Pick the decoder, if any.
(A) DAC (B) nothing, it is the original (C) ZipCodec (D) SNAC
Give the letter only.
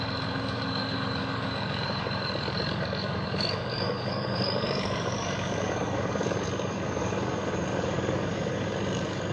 A